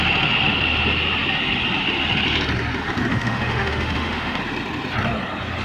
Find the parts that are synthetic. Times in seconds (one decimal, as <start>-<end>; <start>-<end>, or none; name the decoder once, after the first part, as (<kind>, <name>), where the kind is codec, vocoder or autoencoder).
3.1-4.4 (autoencoder, DAC-VAE)